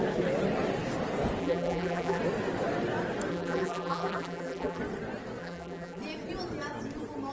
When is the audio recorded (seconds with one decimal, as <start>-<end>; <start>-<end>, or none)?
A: 0.0-1.4; 2.2-3.3; 4.8-5.4; 6.0-7.3